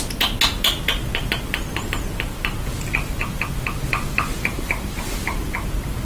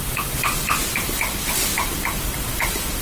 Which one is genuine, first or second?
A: first